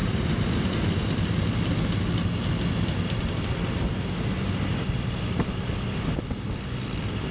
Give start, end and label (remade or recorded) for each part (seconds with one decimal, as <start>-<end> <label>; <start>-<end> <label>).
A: 0.0-7.3 recorded

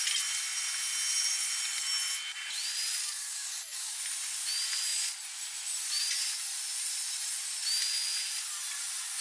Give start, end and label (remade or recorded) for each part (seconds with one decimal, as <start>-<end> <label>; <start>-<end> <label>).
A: 0.0-3.0 recorded; 3.0-4.0 remade; 4.0-9.2 recorded

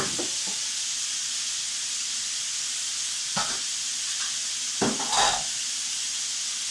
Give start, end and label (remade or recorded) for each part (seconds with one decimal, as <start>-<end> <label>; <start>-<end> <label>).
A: 0.0-6.7 recorded

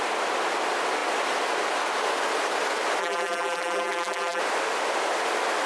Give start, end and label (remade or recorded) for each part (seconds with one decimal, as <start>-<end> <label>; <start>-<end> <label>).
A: 0.0-3.0 recorded; 3.0-4.4 remade; 4.4-5.7 recorded